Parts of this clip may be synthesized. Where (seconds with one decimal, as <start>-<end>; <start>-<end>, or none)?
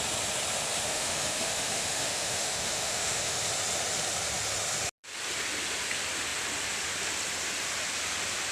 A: 0.8-3.4